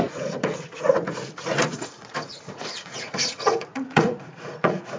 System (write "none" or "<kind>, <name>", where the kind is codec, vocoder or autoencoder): vocoder, Vocos